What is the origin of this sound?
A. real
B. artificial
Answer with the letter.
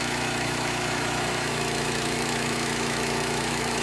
B